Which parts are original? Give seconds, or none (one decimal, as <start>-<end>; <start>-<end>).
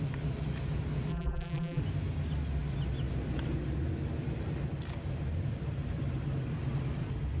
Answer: 0.0-1.1; 1.8-7.4